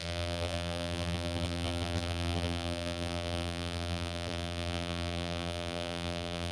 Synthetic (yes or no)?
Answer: yes